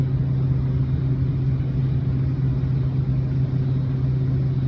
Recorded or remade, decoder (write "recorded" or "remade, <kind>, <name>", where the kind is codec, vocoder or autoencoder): recorded